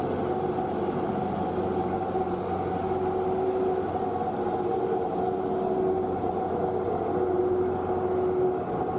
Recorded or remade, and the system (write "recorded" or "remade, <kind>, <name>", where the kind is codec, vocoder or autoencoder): recorded